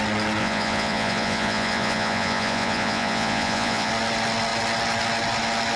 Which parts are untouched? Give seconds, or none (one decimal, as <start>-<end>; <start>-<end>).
0.0-0.4; 3.9-5.8